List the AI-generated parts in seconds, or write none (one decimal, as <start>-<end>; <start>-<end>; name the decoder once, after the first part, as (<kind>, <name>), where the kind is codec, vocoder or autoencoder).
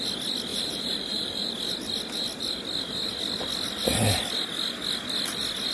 0.5-1.5 (vocoder, BigVGAN v2)